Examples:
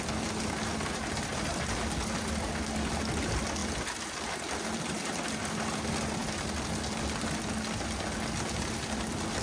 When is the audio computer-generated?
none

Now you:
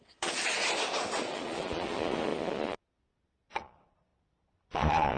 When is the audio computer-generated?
0.0-0.6; 1.2-5.2

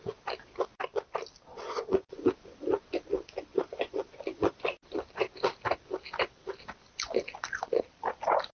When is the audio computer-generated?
1.5-2.2; 3.5-4.5

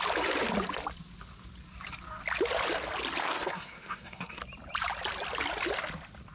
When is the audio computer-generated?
3.2-4.4

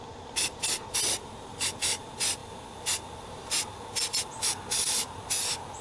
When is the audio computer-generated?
none

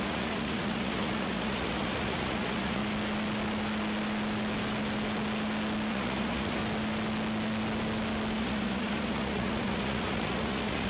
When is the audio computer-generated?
0.0-2.8; 5.9-6.6; 8.4-10.9

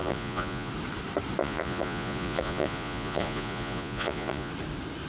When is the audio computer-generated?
0.0-0.7; 1.4-4.5

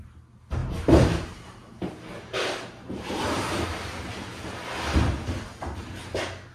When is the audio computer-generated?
0.6-3.6